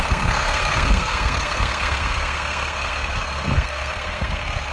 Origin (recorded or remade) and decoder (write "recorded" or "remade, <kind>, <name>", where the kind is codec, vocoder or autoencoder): remade, codec, SNAC